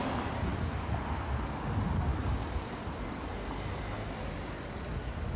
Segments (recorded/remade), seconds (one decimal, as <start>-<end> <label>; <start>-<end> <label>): 0.0-5.4 recorded